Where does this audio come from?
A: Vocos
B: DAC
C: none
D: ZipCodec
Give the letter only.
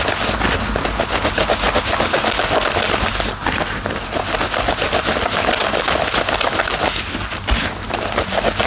C